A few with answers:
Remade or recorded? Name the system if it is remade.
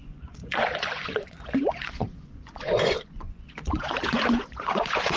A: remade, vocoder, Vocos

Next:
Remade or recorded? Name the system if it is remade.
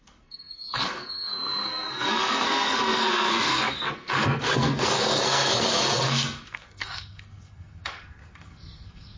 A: remade, codec, SNAC